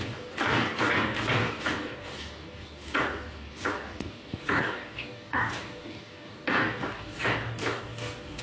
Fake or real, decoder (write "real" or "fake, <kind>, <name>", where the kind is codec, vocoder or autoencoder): fake, codec, DAC